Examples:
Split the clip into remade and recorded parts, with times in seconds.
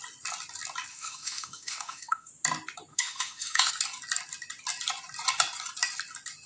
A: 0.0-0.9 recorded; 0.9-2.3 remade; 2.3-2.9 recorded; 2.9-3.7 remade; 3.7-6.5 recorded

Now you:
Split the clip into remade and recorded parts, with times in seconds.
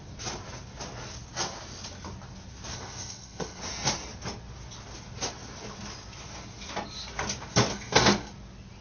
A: 0.0-2.7 recorded; 2.7-3.6 remade; 3.6-7.7 recorded; 7.7-8.3 remade; 8.3-8.8 recorded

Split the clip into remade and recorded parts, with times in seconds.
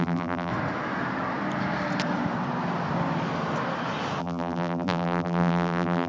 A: 0.0-0.5 remade; 0.5-4.2 recorded; 4.2-6.1 remade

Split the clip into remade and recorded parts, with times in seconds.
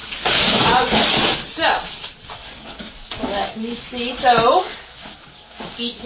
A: 0.0-0.6 remade; 0.6-2.4 recorded; 2.4-3.8 remade; 3.8-4.6 recorded; 4.6-6.1 remade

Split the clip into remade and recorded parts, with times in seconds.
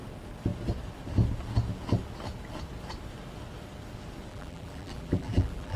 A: 0.0-4.3 recorded; 4.3-5.8 remade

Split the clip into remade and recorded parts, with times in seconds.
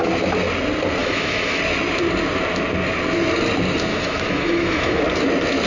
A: 0.0-1.0 recorded; 1.0-1.6 remade; 1.6-3.9 recorded; 3.9-5.0 remade; 5.0-5.7 recorded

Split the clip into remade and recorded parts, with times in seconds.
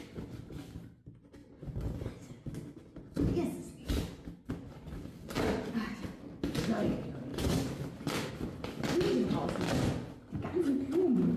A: 0.0-7.3 recorded; 7.3-8.3 remade; 8.3-11.4 recorded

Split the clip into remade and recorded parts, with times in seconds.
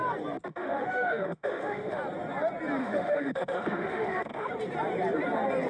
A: 0.0-0.5 recorded; 0.5-2.0 remade; 2.0-2.8 recorded; 2.8-4.5 remade; 4.5-5.7 recorded